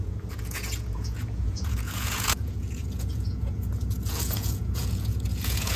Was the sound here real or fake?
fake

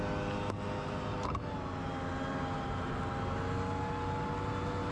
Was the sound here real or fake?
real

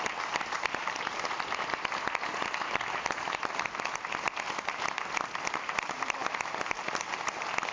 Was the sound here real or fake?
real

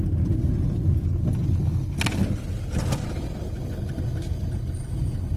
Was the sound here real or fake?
real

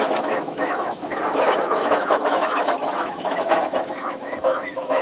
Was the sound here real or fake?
fake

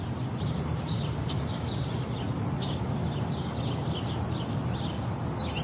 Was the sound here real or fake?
real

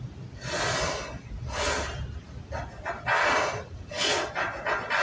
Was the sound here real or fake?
real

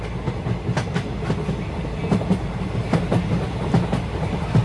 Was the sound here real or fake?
real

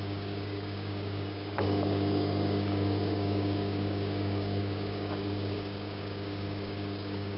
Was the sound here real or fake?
fake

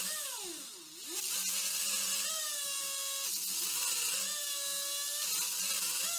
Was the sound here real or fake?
real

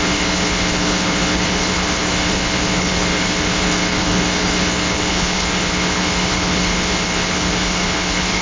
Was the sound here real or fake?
fake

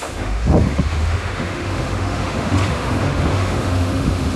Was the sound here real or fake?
fake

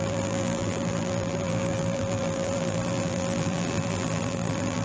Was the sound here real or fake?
fake